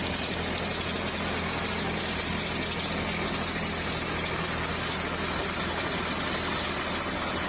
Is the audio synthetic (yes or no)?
no